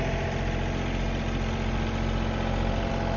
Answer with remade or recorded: recorded